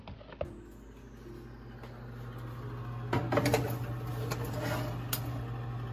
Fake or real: real